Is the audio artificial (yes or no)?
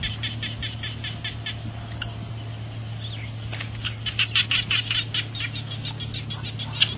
no